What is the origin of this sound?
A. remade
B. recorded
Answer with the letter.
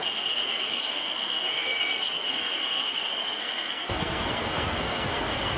A